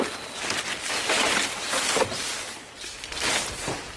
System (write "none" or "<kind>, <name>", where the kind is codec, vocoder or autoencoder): none